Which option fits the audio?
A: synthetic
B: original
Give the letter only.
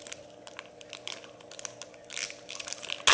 B